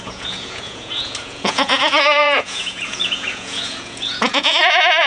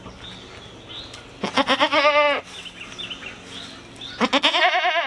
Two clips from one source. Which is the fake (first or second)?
first